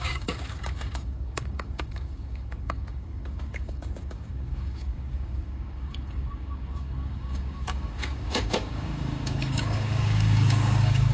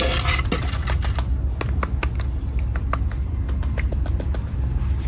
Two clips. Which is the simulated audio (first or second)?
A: first